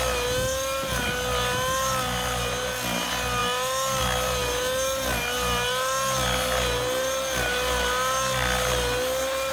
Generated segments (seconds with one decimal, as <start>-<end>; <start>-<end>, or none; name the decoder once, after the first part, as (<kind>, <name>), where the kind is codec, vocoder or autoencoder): none